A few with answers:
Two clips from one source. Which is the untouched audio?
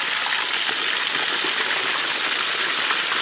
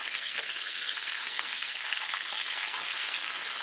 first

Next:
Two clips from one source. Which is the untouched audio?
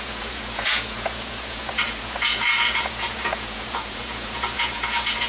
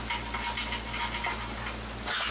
second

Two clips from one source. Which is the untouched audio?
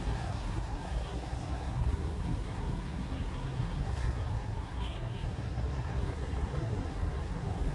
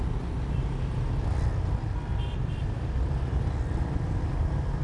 second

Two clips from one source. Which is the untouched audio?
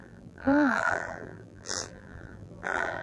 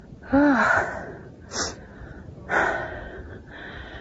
second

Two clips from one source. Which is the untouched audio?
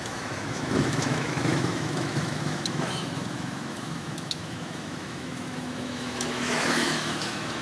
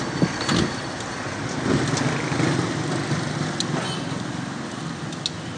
second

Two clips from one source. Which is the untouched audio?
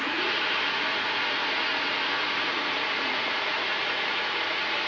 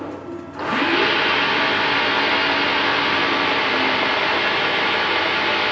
second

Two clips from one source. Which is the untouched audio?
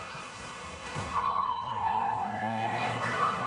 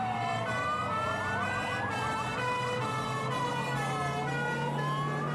second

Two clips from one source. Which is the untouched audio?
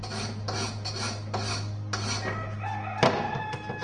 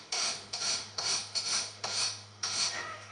first